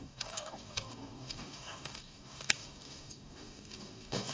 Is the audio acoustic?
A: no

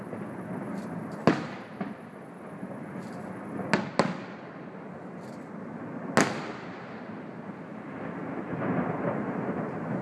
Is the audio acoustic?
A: yes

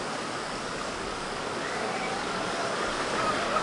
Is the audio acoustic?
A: no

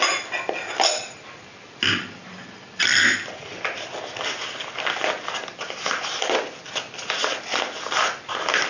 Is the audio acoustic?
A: yes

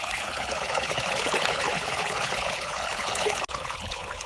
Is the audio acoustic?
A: no